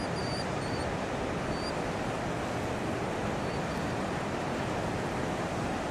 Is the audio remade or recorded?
recorded